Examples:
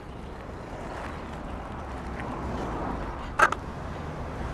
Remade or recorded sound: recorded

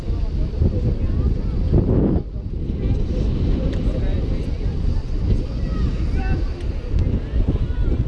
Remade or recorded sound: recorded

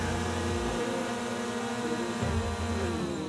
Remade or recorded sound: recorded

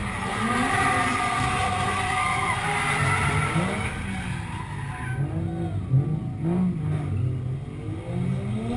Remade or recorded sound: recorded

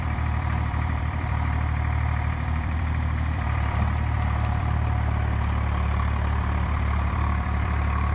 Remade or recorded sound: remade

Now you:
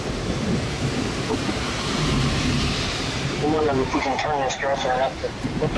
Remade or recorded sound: remade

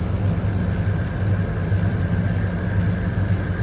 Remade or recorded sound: recorded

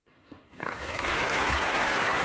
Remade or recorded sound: remade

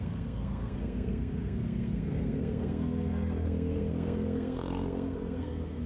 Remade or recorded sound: remade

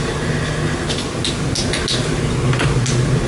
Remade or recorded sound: recorded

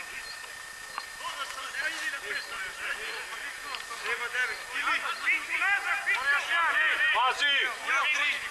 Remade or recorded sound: recorded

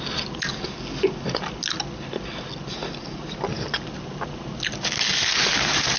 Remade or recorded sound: recorded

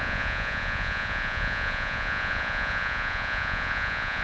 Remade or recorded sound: remade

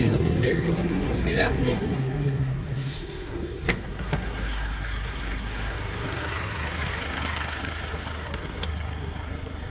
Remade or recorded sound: remade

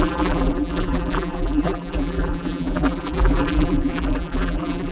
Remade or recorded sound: remade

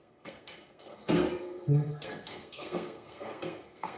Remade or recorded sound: remade